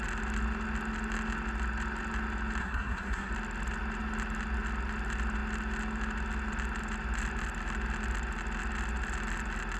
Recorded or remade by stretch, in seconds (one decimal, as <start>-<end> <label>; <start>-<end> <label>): 0.0-2.6 recorded; 2.6-3.3 remade; 3.3-9.8 recorded

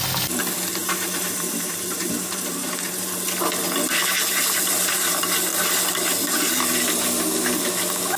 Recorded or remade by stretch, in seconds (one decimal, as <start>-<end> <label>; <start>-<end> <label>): 0.0-0.8 recorded; 0.8-3.1 remade; 3.1-4.2 recorded; 4.2-5.1 remade; 5.1-8.2 recorded

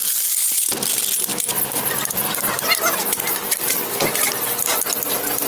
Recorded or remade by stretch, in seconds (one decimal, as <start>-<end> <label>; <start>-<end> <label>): 0.0-1.3 recorded; 1.3-4.6 remade; 4.6-5.5 recorded